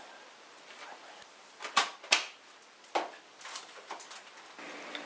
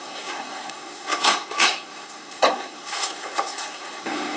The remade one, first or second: second